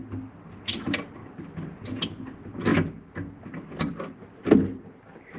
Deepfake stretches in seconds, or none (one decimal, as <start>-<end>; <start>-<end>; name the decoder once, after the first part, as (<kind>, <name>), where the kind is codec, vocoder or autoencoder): none